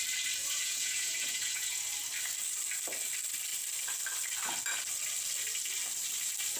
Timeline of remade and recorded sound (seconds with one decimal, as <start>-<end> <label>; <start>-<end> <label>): 0.0-0.4 recorded; 0.4-1.8 remade; 1.8-6.6 recorded